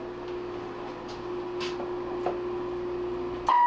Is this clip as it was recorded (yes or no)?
yes